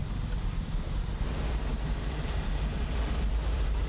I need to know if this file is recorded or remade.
recorded